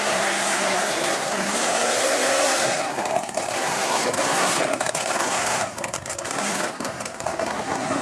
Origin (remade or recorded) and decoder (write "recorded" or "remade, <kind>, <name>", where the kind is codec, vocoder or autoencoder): remade, codec, SNAC